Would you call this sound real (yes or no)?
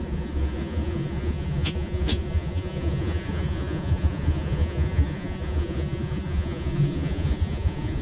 no